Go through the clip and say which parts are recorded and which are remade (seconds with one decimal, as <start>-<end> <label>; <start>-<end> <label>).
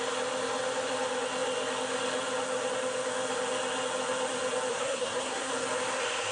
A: 0.0-4.7 recorded; 4.7-5.5 remade; 5.5-6.3 recorded